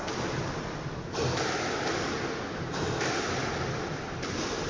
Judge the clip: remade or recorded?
remade